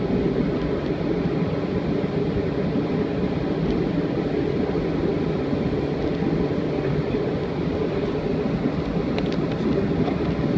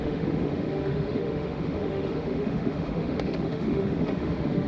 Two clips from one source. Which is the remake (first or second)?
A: second